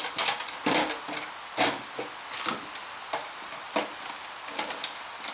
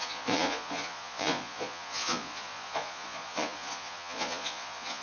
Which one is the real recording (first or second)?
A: first